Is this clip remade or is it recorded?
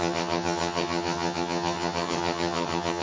remade